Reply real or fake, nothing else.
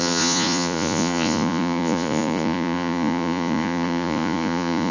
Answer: fake